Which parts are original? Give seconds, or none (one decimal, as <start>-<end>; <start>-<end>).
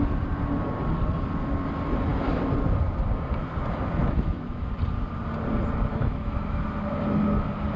0.0-4.0; 4.7-5.9; 6.6-7.8